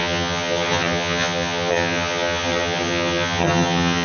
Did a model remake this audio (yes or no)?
yes